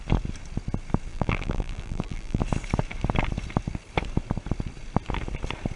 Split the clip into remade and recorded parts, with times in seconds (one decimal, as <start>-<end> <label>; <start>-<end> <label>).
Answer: 0.0-1.1 recorded; 1.1-2.4 remade; 2.4-5.8 recorded